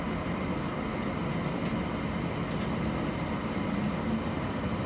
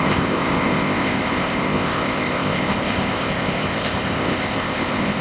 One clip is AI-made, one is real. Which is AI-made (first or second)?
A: second